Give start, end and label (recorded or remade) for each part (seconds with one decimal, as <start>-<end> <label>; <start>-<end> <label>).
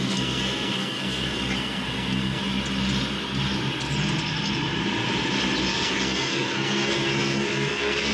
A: 0.0-2.4 remade; 2.4-5.7 recorded; 5.7-8.1 remade